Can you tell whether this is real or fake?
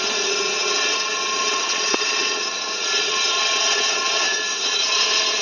fake